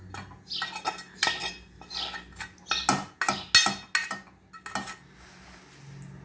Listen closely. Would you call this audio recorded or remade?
recorded